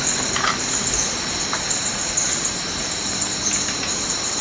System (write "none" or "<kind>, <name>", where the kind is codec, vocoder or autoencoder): none